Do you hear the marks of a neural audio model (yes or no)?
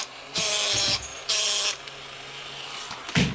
no